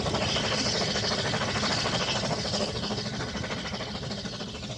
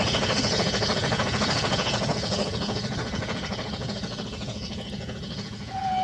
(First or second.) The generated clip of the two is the second